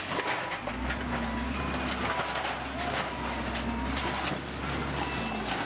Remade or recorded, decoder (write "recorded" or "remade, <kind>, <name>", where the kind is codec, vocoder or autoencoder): recorded